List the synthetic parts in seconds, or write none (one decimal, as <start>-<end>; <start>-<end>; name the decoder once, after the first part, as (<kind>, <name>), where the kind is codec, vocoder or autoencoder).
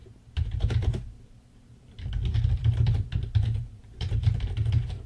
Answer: 0.0-1.8 (vocoder, BigVGAN v2); 2.6-5.1